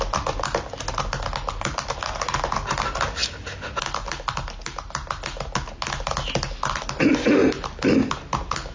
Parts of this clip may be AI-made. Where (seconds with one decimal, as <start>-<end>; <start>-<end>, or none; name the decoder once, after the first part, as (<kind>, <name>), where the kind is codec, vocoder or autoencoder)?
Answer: none